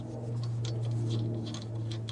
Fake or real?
real